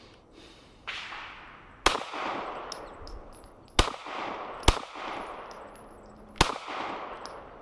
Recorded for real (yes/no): yes